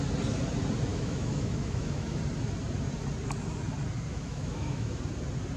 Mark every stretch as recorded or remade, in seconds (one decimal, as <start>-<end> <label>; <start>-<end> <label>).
0.0-0.9 recorded; 0.9-2.2 remade; 2.2-4.1 recorded; 4.1-5.0 remade; 5.0-5.6 recorded